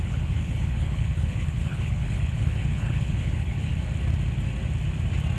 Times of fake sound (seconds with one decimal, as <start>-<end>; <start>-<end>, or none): 0.0-3.7